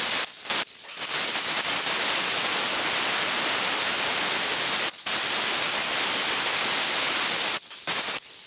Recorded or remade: recorded